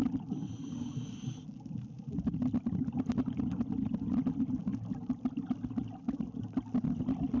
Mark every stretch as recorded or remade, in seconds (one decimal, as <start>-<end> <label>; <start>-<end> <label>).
0.0-7.4 recorded